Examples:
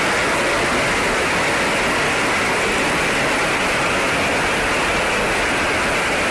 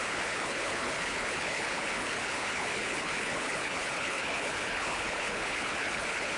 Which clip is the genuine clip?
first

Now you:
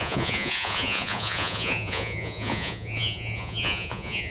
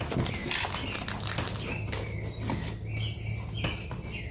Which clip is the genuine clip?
second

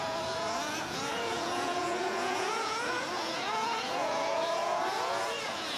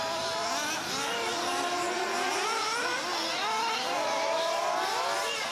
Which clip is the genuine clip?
second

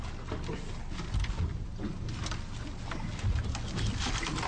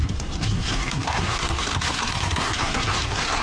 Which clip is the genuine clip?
first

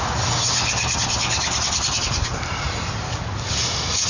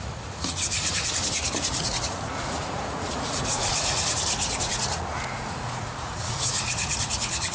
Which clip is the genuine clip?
first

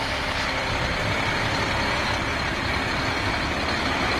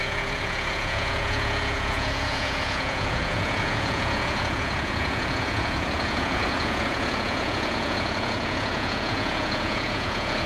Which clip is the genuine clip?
first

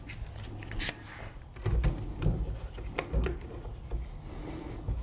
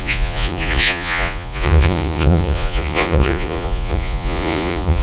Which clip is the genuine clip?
first